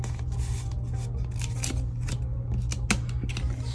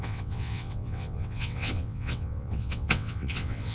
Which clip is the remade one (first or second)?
second